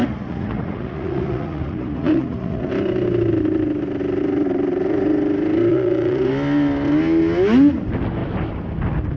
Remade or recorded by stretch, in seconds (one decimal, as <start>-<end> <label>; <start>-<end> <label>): 0.0-2.7 remade; 2.7-5.7 recorded; 5.7-6.3 remade; 6.3-9.2 recorded